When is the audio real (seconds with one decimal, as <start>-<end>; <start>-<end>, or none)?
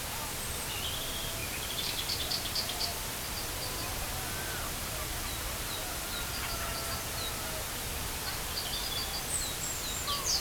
0.0-1.4; 3.3-10.4